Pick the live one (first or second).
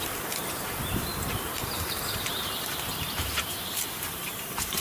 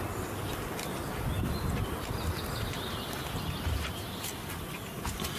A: second